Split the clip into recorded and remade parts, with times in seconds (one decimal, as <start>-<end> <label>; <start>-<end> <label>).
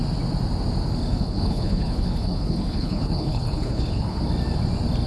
0.0-1.1 recorded; 1.1-4.2 remade; 4.2-5.1 recorded